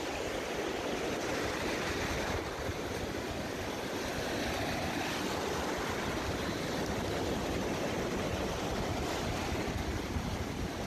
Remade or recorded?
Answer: recorded